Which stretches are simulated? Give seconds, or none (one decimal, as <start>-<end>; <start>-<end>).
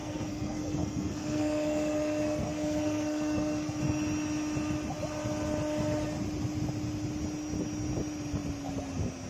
0.0-3.8